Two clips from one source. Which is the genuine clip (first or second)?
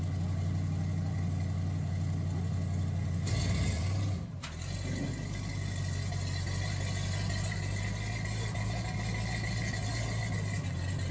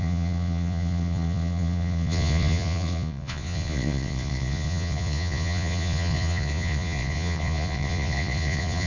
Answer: first